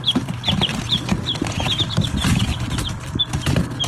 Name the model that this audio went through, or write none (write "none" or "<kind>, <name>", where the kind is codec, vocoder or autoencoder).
vocoder, BigVGAN v2